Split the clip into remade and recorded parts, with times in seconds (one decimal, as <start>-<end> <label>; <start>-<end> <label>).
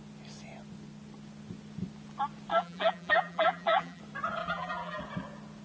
0.0-2.5 recorded; 2.5-4.0 remade; 4.0-4.4 recorded; 4.4-5.0 remade; 5.0-5.6 recorded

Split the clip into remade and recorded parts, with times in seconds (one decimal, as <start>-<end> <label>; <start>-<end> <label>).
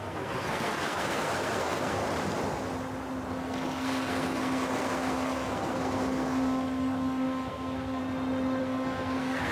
0.0-2.0 remade; 2.0-3.3 recorded; 3.3-8.0 remade; 8.0-8.6 recorded; 8.6-9.5 remade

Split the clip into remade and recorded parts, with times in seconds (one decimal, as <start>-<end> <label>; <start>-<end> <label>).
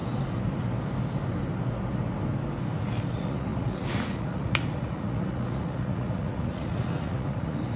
0.0-3.1 recorded; 3.1-7.8 remade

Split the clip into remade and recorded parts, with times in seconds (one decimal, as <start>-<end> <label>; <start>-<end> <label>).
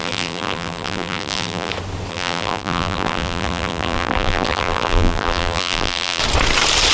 0.0-1.7 remade; 1.7-2.1 recorded; 2.1-6.2 remade; 6.2-6.9 recorded